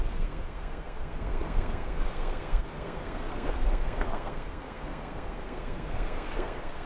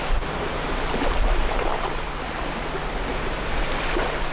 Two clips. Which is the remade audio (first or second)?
first